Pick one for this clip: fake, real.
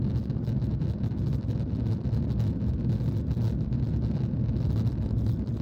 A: real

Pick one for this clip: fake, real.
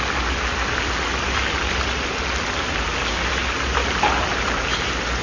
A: real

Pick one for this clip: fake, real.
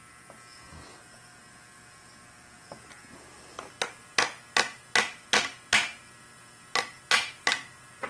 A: real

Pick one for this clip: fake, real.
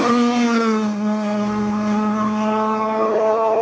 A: fake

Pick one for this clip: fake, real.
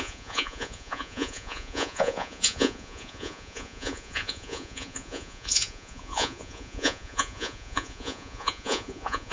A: fake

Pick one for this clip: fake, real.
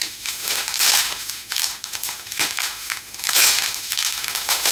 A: fake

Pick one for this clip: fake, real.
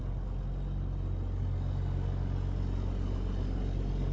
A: real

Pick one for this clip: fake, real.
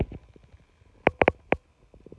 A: real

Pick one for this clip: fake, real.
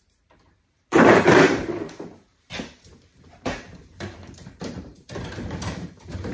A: fake